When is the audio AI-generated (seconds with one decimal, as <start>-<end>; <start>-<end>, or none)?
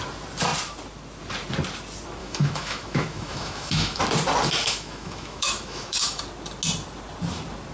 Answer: 2.2-4.0; 4.6-6.2